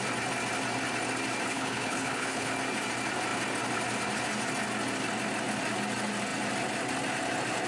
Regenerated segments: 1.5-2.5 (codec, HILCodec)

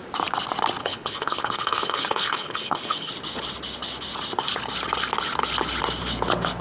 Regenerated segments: 0.8-3.1 (codec, HILCodec)